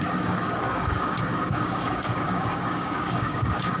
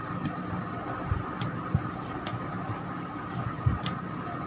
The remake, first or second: first